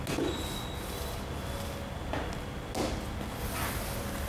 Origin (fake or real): real